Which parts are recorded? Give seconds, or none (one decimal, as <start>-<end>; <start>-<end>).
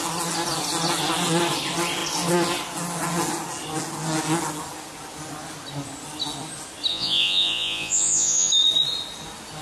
0.0-6.9; 8.5-9.6